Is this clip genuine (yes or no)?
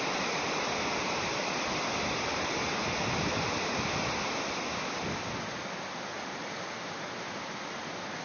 yes